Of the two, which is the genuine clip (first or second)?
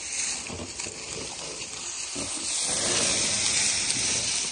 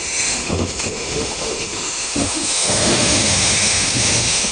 first